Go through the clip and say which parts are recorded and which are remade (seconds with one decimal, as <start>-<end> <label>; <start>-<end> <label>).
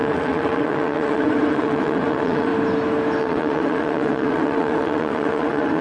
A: 0.0-2.5 remade; 2.5-3.2 recorded; 3.2-5.8 remade